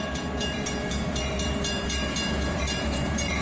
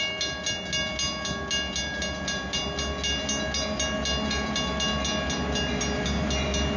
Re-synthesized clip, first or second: first